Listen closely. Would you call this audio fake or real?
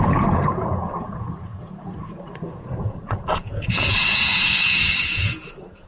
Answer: fake